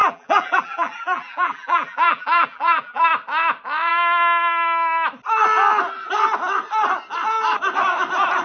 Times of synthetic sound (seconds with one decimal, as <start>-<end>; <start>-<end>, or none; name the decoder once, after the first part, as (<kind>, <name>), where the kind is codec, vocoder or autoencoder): 0.0-3.0 (vocoder, BigVGAN v2)